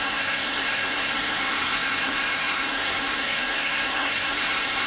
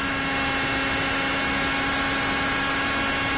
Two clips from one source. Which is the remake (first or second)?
first